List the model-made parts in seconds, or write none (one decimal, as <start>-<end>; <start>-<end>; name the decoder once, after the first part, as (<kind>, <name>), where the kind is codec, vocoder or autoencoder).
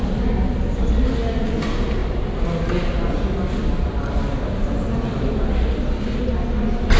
none